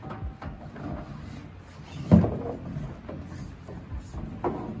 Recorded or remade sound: recorded